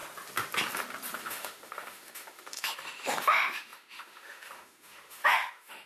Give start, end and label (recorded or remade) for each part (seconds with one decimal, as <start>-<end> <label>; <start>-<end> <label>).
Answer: 0.0-1.2 recorded; 1.2-5.9 remade